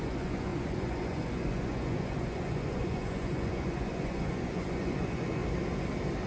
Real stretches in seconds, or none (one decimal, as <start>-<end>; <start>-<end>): 5.4-6.3